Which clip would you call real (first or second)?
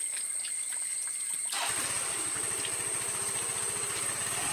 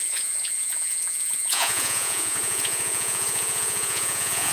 first